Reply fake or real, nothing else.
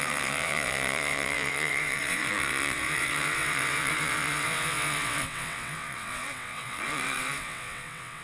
fake